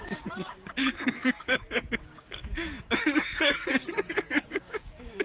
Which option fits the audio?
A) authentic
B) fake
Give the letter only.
B